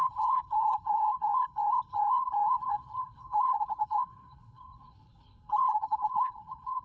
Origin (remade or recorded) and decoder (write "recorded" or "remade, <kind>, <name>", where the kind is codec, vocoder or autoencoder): remade, codec, HILCodec